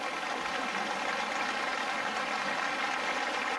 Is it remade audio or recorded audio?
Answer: recorded